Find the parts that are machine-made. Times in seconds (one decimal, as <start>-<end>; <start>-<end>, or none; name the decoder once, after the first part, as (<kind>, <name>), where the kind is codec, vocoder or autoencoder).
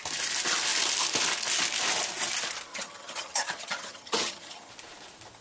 2.7-4.7 (vocoder, HiFi-GAN)